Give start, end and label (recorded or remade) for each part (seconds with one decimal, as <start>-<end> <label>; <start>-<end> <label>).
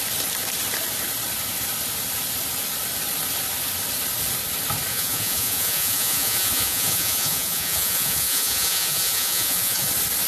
0.0-4.9 recorded; 4.9-9.9 remade; 9.9-10.3 recorded